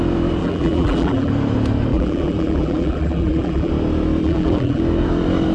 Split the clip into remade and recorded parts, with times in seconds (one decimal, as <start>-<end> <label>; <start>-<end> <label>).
0.0-0.4 recorded; 0.4-1.3 remade; 1.3-1.9 recorded; 1.9-3.7 remade; 3.7-4.2 recorded; 4.2-4.8 remade; 4.8-5.5 recorded